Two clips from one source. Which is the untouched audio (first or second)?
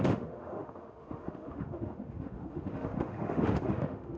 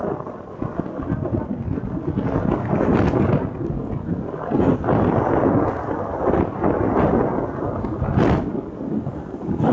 second